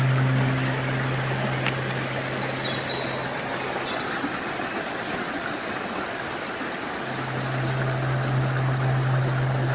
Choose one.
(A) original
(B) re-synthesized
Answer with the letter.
A